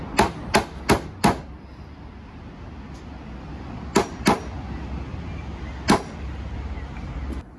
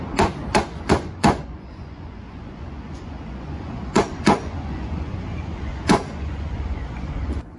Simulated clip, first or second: second